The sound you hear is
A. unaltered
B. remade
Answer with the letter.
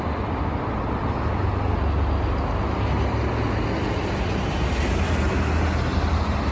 A